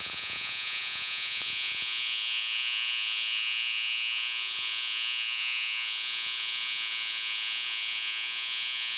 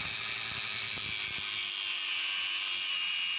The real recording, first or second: second